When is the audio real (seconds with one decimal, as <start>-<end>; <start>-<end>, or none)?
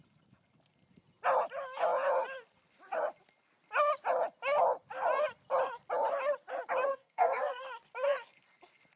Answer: 0.0-6.9; 7.6-9.0